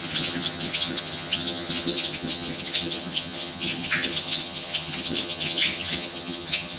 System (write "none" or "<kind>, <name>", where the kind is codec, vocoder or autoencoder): vocoder, HiFi-GAN